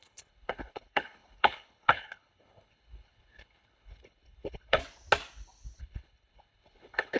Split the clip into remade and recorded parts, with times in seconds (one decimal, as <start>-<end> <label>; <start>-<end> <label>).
0.0-4.8 remade; 4.8-5.8 recorded; 5.8-7.2 remade